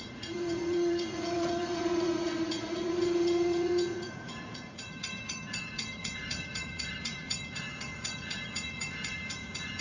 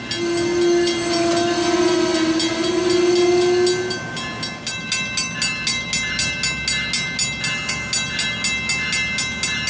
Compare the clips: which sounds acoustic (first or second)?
second